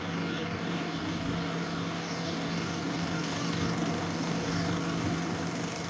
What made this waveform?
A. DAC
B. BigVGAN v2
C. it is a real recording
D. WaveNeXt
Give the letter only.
A